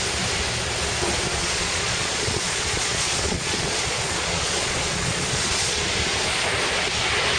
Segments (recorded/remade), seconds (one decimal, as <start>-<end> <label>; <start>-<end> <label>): 0.0-1.4 recorded; 1.4-5.8 remade; 5.8-7.4 recorded